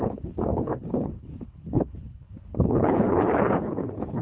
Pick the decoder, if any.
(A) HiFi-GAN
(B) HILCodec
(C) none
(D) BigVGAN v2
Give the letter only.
B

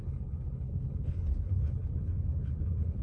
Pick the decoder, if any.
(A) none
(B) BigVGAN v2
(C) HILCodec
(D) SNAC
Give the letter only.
C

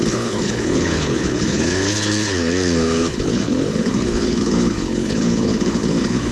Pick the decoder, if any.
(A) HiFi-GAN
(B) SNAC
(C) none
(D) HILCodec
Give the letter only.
D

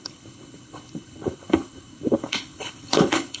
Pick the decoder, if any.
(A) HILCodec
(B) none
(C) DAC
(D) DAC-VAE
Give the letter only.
A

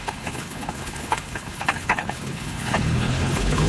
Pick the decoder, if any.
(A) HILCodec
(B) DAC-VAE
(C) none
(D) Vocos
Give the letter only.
A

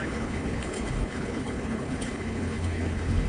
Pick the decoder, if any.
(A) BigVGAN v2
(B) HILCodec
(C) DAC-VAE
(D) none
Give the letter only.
B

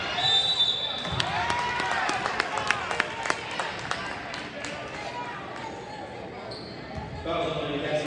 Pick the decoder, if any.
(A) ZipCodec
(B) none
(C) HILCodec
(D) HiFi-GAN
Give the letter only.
B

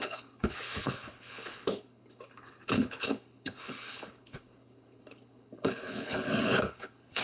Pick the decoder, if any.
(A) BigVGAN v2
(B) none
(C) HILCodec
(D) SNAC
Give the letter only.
C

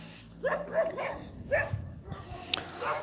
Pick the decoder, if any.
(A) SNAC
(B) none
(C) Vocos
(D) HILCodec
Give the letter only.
B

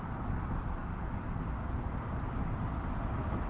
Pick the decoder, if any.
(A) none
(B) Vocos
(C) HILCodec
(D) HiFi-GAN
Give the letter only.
A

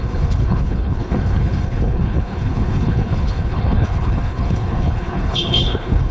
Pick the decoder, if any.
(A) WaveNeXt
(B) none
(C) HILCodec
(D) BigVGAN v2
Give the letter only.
C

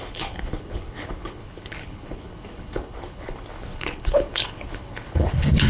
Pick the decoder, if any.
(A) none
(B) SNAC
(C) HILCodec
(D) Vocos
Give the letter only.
C